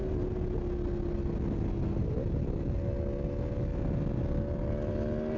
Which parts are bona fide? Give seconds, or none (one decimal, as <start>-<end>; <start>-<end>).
0.0-5.4